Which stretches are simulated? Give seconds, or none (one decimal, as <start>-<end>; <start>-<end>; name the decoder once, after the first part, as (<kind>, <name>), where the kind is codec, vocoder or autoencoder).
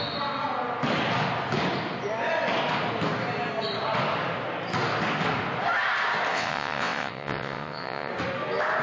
6.3-8.1 (vocoder, WaveNeXt)